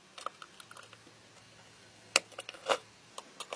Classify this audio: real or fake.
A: real